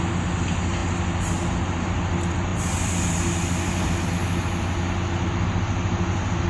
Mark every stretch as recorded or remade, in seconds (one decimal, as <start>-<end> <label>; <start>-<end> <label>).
0.0-6.5 recorded